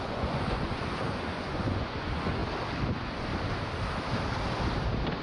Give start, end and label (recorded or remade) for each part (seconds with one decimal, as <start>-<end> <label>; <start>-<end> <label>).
0.0-2.4 remade; 2.4-2.9 recorded; 2.9-3.3 remade; 3.3-5.2 recorded